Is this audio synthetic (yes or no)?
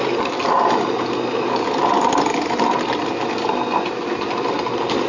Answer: no